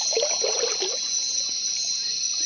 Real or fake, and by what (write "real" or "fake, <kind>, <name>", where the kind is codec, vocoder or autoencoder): real